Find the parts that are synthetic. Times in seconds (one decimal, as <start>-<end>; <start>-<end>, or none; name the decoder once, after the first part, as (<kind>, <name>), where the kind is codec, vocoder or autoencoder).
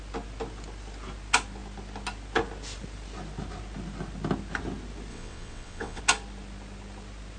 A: 5.1-6.0 (vocoder, WaveNeXt)